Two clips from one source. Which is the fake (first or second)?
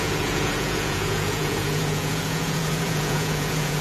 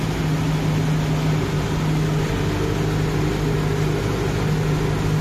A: first